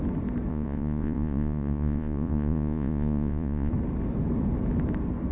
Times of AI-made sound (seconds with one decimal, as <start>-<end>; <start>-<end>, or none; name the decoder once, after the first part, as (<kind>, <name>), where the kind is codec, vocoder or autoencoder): 0.5-3.7 (vocoder, Vocos)